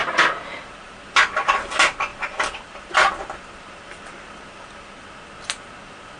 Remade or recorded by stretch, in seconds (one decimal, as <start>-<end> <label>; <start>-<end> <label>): 0.0-1.0 remade; 1.0-2.1 recorded; 2.1-4.9 remade; 4.9-6.2 recorded